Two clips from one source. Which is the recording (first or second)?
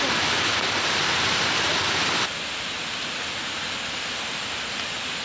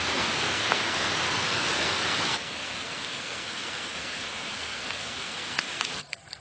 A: first